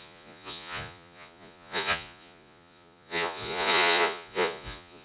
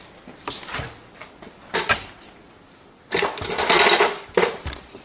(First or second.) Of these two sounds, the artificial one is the first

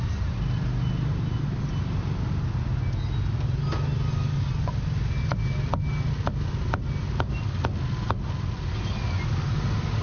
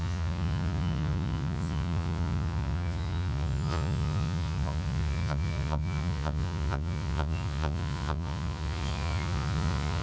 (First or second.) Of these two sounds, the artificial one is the second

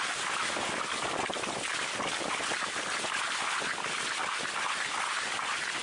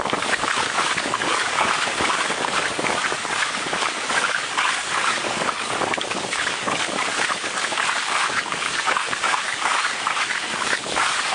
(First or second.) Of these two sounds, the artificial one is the second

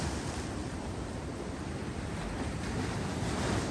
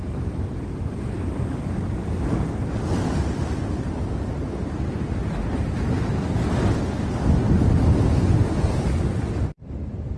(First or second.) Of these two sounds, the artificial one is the first